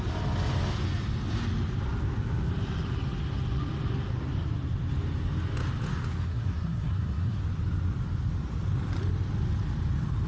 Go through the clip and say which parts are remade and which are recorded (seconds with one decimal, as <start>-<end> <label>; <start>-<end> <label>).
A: 0.0-6.2 recorded; 6.2-7.4 remade; 7.4-10.3 recorded

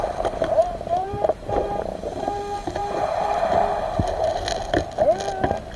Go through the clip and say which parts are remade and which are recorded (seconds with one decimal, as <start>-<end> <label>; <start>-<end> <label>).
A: 0.0-0.6 recorded; 0.6-2.4 remade; 2.4-2.8 recorded; 2.8-3.4 remade; 3.4-5.8 recorded

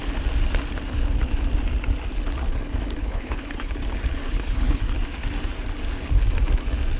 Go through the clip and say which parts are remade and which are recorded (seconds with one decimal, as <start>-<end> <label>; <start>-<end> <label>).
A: 0.0-3.0 recorded; 3.0-3.7 remade; 3.7-4.2 recorded; 4.2-4.8 remade; 4.8-7.0 recorded

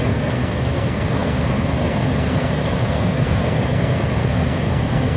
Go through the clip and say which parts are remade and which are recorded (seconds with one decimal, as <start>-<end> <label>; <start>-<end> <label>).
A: 0.0-5.2 remade